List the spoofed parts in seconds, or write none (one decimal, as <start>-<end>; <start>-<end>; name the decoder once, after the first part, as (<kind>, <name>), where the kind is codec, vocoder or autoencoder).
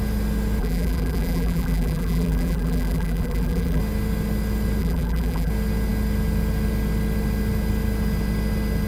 0.6-3.8 (vocoder, BigVGAN v2); 4.8-5.5